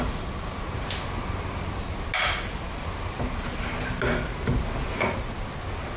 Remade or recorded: recorded